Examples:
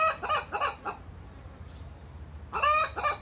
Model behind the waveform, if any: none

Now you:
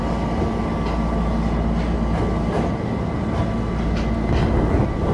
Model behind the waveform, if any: none